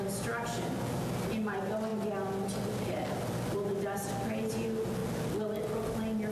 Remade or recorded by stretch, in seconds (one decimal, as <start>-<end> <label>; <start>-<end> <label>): 0.0-6.3 recorded

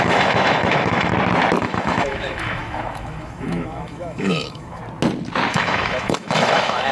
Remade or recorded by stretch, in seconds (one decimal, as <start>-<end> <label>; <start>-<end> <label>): 0.0-1.1 remade; 1.1-1.6 recorded; 1.6-4.8 remade; 4.8-5.5 recorded; 5.5-6.9 remade